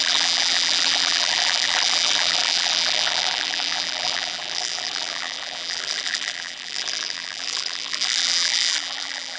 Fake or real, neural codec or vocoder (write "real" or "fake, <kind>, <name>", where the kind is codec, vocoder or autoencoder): fake, vocoder, BigVGAN v2